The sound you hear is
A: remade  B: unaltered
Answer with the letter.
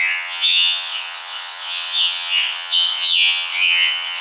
A